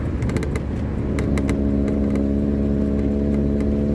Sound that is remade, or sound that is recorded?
recorded